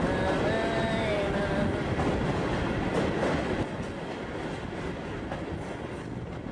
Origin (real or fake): real